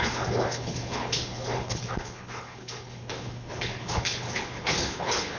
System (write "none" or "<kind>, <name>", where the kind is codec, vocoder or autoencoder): codec, HILCodec